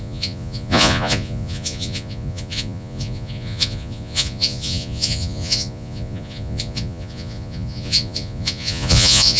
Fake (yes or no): yes